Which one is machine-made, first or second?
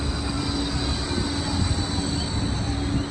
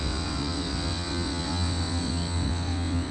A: second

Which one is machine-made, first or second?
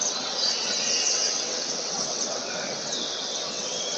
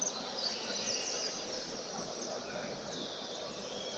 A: first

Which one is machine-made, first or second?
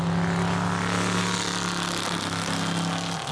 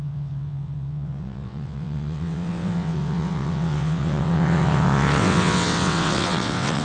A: second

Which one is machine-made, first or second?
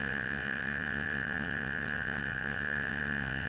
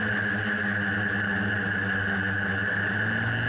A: first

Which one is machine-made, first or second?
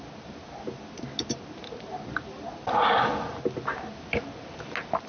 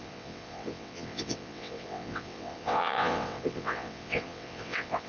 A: second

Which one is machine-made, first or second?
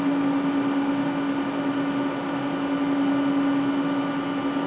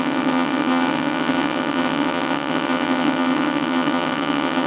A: second